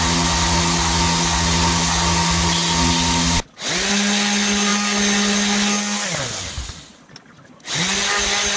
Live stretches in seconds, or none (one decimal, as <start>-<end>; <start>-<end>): 0.0-8.6